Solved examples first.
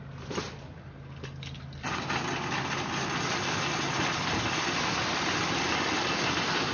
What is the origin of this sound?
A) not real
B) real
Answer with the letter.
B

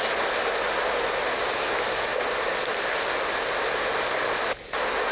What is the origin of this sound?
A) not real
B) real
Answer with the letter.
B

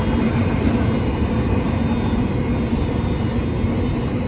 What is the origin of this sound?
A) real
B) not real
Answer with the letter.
A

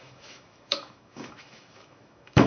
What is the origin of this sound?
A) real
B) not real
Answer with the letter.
B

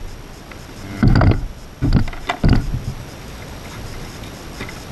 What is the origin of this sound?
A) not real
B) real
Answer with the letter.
B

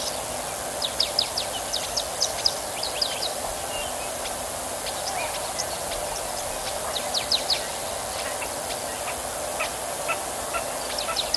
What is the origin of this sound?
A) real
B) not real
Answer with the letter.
A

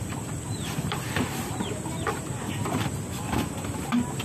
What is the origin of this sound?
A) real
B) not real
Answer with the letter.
B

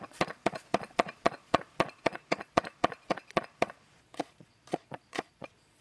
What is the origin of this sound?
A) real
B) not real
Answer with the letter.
B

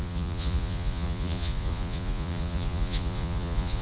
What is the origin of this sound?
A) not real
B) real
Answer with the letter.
A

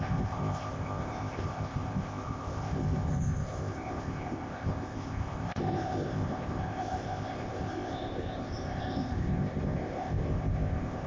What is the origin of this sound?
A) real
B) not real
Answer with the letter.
B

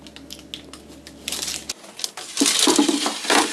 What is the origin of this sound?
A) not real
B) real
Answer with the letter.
B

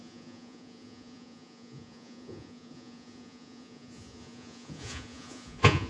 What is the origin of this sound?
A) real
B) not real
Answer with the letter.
B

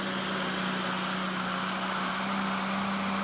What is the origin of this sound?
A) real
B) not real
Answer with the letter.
A